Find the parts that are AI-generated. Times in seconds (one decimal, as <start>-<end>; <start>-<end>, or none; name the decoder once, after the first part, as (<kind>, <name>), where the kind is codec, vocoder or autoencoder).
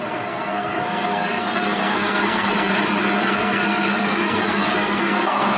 0.0-2.7 (codec, SNAC); 3.2-5.6